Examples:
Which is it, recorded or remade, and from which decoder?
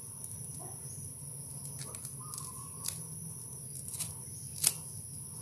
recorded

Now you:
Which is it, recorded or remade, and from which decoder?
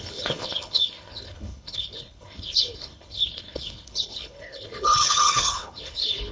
remade, codec, HILCodec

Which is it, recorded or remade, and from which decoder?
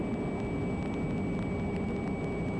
recorded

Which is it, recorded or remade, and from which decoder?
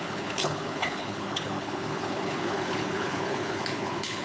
remade, codec, HILCodec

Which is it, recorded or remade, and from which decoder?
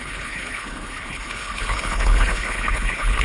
remade, codec, HILCodec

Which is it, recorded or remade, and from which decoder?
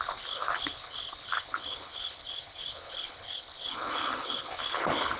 remade, codec, HILCodec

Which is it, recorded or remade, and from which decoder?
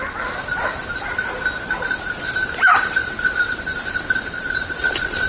recorded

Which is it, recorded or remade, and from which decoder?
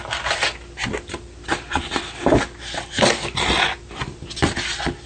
recorded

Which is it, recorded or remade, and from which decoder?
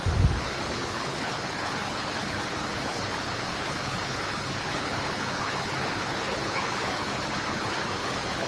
remade, codec, HILCodec